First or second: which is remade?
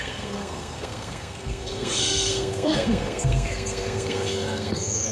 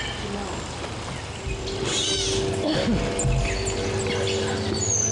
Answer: first